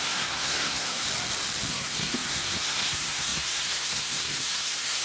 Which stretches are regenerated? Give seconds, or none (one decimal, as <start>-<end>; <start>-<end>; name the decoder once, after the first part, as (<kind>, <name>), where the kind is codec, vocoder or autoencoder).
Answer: 0.0-1.1 (codec, SNAC); 1.7-5.0